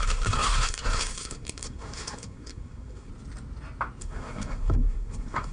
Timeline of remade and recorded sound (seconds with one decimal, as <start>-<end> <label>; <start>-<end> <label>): 0.0-3.1 remade; 3.1-4.0 recorded; 4.0-5.5 remade